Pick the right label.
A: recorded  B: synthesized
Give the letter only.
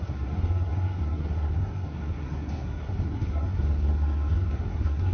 B